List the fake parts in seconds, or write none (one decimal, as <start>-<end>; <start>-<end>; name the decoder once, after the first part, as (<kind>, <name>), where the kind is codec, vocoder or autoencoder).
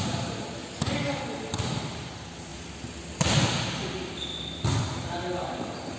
0.6-1.2 (codec, DAC)